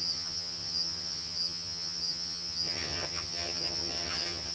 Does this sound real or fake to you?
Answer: fake